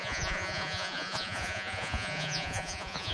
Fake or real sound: fake